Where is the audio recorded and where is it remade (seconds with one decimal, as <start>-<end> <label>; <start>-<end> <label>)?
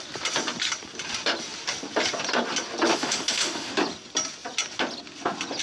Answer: 0.0-2.9 recorded; 2.9-3.7 remade; 3.7-5.6 recorded